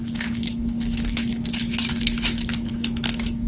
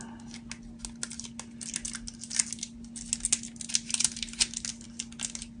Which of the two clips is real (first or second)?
second